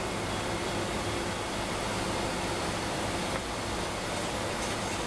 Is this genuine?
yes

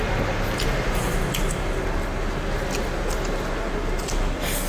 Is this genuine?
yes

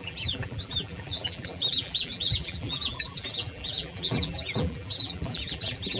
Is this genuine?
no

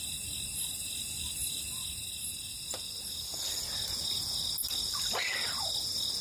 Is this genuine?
yes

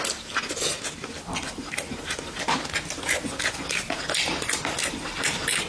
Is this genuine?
yes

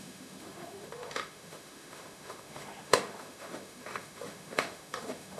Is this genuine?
no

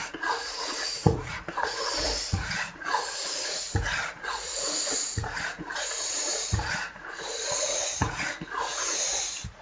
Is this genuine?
no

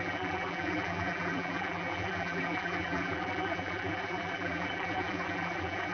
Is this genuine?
no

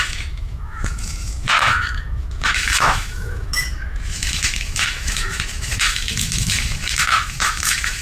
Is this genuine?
no